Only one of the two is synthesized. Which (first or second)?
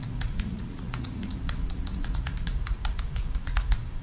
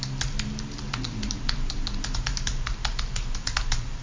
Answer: first